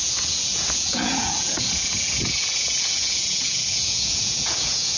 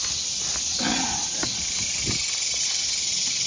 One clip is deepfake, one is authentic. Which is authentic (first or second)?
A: second